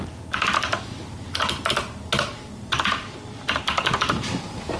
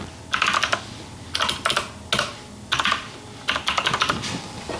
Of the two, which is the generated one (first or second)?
first